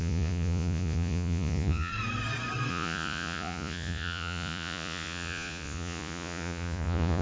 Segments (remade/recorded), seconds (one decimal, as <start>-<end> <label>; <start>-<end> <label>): 0.0-1.9 remade; 1.9-2.7 recorded; 2.7-7.2 remade